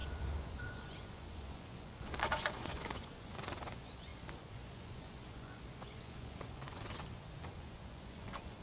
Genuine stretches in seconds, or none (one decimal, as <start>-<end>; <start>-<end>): none